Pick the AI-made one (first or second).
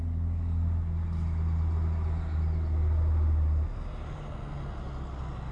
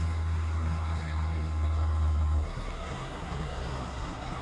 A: second